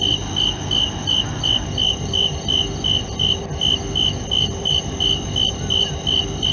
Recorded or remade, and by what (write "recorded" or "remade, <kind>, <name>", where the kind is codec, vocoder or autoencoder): recorded